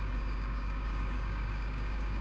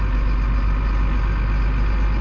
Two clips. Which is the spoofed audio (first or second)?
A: first